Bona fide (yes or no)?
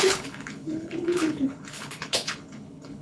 no